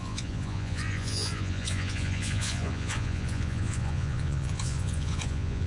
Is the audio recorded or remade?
remade